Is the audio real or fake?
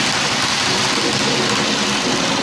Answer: real